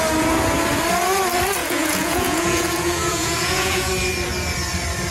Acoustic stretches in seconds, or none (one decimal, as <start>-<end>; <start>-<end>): 0.0-1.6; 3.9-5.1